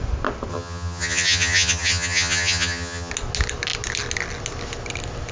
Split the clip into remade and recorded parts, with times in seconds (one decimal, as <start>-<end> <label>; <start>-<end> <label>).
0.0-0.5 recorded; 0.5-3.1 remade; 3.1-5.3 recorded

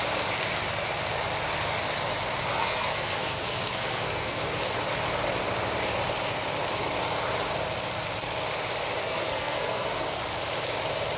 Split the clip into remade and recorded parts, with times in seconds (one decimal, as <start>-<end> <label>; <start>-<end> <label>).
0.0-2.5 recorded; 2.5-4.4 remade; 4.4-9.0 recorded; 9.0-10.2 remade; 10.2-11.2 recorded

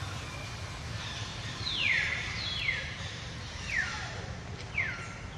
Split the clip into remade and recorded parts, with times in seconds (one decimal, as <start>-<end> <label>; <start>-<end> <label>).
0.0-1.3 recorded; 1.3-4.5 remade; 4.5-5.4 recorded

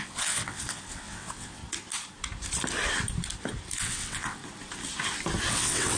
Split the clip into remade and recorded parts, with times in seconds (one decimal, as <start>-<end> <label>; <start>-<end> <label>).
0.0-1.6 remade; 1.6-3.8 recorded; 3.8-4.4 remade; 4.4-5.5 recorded; 5.5-6.0 remade